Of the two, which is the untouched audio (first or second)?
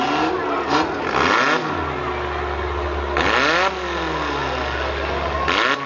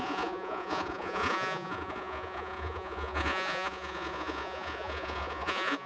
first